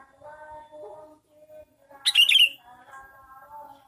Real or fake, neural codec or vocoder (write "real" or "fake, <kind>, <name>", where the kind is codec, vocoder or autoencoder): real